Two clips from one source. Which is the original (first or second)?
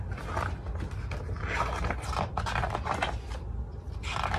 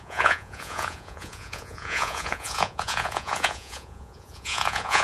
first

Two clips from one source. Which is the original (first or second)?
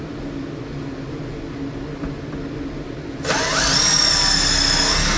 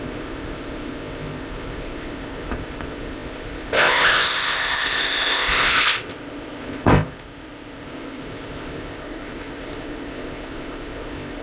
first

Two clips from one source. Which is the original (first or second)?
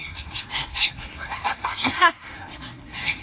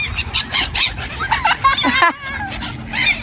second